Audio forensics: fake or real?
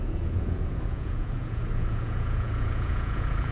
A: fake